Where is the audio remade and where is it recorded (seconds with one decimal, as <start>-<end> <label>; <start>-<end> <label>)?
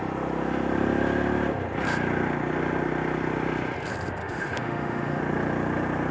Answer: 0.0-4.2 recorded; 4.2-5.2 remade; 5.2-6.1 recorded